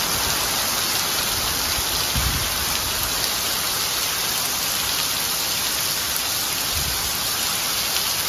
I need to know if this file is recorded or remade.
recorded